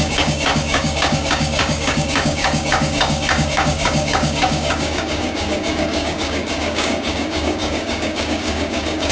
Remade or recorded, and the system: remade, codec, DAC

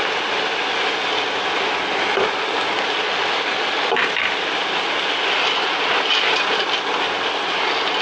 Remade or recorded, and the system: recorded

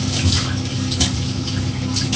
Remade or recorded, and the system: remade, codec, DAC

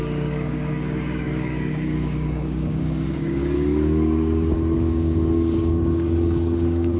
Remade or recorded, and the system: remade, codec, DAC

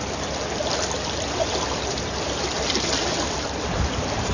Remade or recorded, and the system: recorded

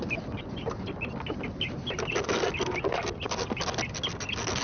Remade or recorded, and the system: recorded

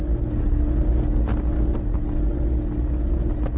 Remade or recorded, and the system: recorded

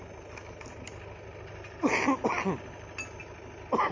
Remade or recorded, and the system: recorded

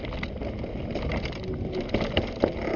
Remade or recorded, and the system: recorded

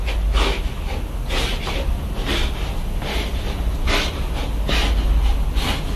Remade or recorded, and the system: recorded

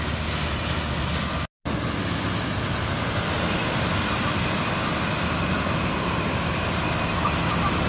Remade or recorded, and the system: recorded